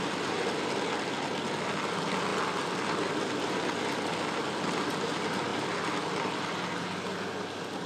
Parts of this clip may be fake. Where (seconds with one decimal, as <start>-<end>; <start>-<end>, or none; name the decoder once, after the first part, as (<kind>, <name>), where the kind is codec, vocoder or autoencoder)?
none